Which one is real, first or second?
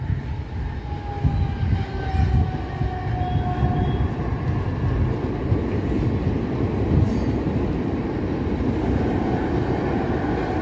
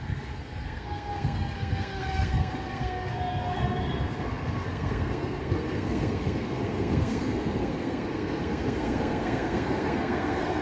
first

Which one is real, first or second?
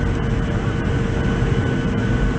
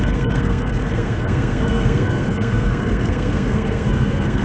first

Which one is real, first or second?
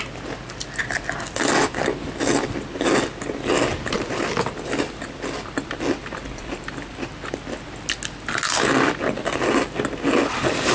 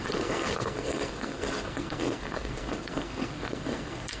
first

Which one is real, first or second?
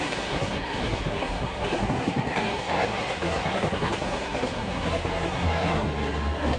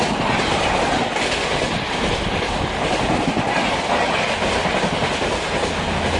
second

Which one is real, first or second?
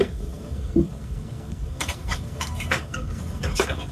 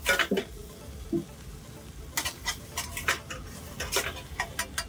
second